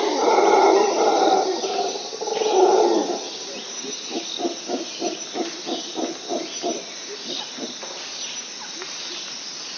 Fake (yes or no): no